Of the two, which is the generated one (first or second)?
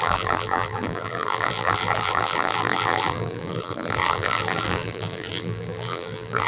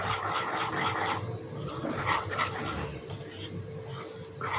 first